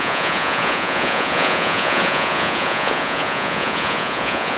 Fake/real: fake